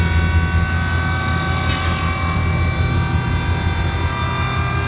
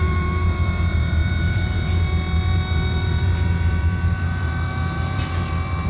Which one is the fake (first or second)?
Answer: second